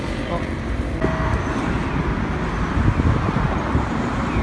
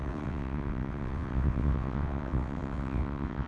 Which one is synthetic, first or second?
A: second